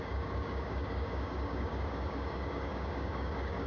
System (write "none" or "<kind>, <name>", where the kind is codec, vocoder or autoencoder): codec, DAC